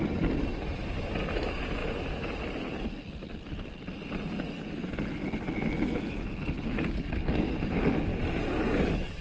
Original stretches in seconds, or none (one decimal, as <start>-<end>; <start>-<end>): 0.0-9.2